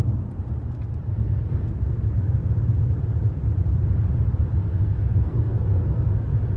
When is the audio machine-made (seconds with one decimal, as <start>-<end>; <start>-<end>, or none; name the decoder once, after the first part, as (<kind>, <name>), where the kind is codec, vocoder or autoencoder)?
1.1-2.4 (codec, SNAC); 4.7-6.1